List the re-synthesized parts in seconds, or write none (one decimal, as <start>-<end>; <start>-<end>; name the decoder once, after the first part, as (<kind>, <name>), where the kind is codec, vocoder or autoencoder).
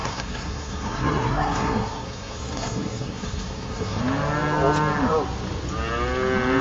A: 0.0-4.0 (codec, SNAC)